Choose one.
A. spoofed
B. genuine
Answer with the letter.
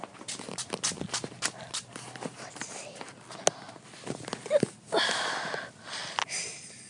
B